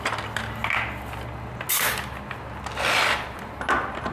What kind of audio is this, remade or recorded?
recorded